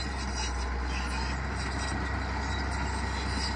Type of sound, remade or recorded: recorded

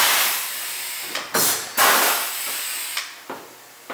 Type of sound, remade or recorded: recorded